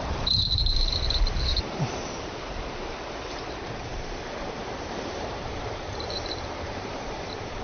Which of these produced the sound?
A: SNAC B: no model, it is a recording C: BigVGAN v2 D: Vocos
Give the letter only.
C